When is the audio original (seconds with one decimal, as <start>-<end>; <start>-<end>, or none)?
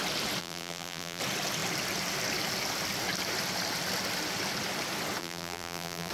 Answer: 0.0-0.4; 1.2-5.2